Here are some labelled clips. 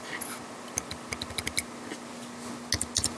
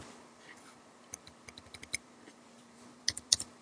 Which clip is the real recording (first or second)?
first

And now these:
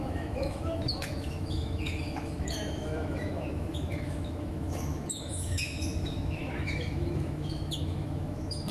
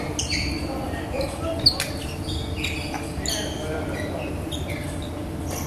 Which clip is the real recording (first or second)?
second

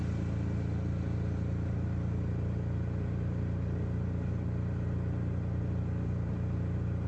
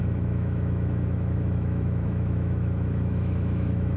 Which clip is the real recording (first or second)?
first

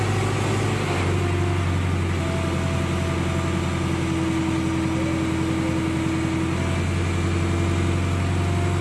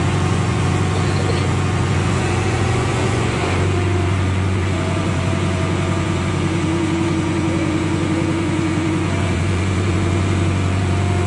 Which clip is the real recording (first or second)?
first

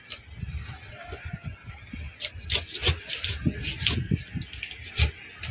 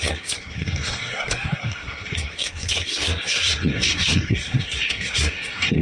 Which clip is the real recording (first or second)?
first